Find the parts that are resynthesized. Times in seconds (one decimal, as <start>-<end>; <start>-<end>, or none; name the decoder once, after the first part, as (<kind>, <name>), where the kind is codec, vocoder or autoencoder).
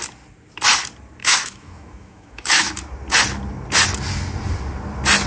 1.2-2.7 (autoencoder, DAC-VAE)